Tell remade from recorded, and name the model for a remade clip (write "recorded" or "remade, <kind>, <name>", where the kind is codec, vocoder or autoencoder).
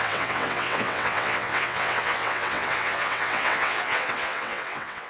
remade, vocoder, WaveNeXt